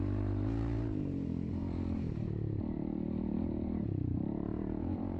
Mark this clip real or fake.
fake